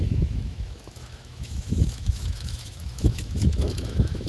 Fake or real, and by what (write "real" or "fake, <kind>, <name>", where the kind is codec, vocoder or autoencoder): fake, autoencoder, DAC-VAE